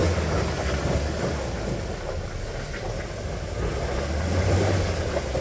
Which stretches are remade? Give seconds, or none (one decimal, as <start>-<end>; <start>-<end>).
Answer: none

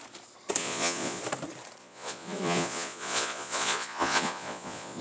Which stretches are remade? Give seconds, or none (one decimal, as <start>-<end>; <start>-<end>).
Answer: 0.6-1.2; 1.8-5.0